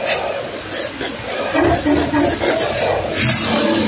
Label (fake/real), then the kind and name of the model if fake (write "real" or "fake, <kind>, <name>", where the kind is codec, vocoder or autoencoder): real